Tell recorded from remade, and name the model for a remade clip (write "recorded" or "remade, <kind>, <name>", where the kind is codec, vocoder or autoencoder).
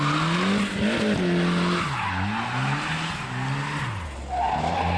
recorded